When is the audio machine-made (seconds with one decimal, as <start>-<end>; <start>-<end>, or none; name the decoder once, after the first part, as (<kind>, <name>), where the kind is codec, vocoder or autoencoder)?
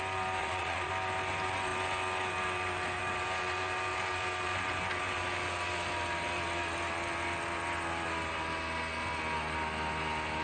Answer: 0.4-0.9 (vocoder, Vocos)